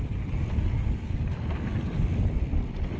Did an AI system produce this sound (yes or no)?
no